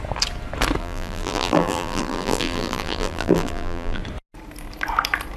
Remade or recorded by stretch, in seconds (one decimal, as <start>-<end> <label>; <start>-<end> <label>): 0.0-0.8 recorded; 0.8-4.0 remade; 4.0-5.4 recorded